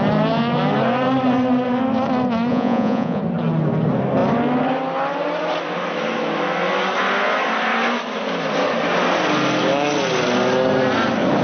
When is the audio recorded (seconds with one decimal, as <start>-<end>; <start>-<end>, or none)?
0.0-2.5; 3.2-11.4